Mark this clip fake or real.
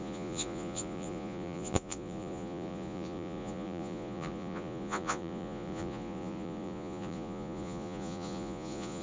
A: fake